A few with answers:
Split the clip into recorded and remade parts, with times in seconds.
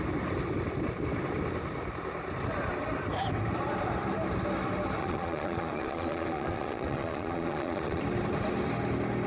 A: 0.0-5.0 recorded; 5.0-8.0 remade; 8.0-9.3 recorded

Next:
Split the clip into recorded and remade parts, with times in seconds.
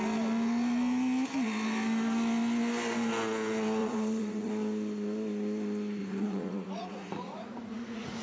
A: 0.0-3.8 recorded; 3.8-4.5 remade; 4.5-6.0 recorded; 6.0-8.2 remade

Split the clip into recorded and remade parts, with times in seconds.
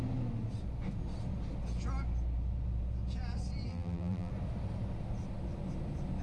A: 0.0-3.7 recorded; 3.7-4.3 remade; 4.3-6.2 recorded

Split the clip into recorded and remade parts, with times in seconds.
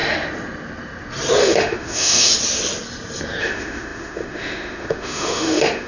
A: 0.0-1.4 recorded; 1.4-2.3 remade; 2.3-3.4 recorded; 3.4-5.9 remade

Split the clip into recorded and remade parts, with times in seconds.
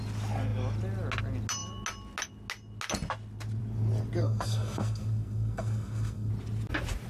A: 0.0-4.2 recorded; 4.2-6.3 remade; 6.3-7.1 recorded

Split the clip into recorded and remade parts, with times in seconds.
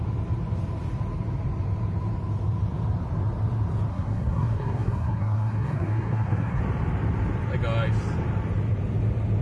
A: 0.0-3.9 recorded; 3.9-6.6 remade; 6.6-9.4 recorded